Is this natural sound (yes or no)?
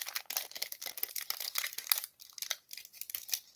yes